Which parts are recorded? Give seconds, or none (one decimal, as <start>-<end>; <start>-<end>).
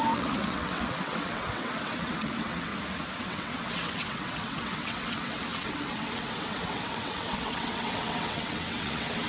2.7-3.2